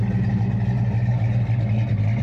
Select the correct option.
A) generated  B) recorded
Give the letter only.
B